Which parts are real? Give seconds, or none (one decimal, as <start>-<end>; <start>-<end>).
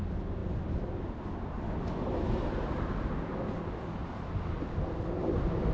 0.0-4.0; 4.6-5.7